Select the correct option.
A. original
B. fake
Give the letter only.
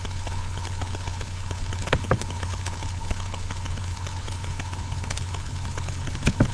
B